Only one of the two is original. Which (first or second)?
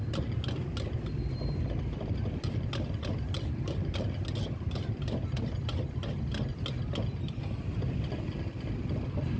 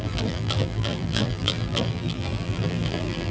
first